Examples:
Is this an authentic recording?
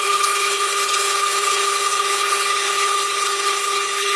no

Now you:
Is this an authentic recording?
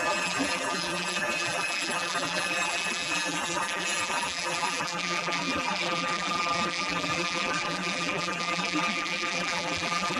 no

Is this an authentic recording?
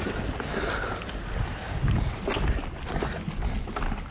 yes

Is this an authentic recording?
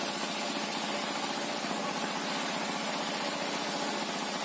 yes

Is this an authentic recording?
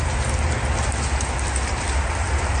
yes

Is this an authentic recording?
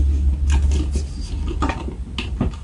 yes